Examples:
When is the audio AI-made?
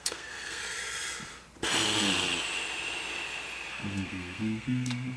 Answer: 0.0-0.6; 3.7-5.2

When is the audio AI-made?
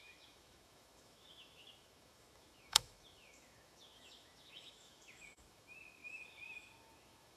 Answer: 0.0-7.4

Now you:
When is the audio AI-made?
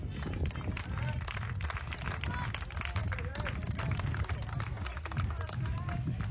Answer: none